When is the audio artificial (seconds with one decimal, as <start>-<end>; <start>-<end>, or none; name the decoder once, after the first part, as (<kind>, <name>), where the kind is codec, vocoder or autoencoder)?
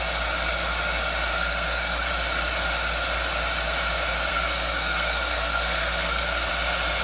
1.3-2.1 (codec, SNAC); 4.3-6.5